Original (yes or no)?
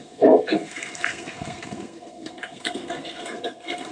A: no